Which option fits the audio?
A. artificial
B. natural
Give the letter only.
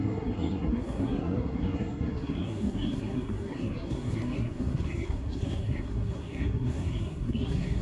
A